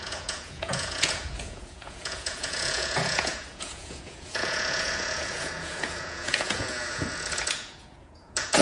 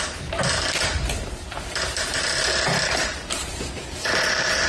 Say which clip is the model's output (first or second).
first